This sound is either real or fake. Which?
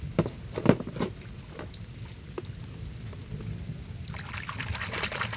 real